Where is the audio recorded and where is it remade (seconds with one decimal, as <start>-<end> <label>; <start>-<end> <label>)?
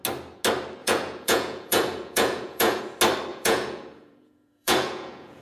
0.0-0.8 recorded; 0.8-2.8 remade; 2.8-3.3 recorded; 3.3-5.4 remade